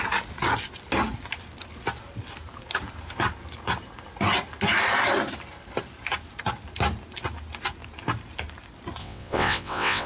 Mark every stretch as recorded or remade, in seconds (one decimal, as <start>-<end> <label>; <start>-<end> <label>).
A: 0.0-9.0 recorded; 9.0-10.1 remade